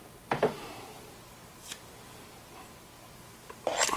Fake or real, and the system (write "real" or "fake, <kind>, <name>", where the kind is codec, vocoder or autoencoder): real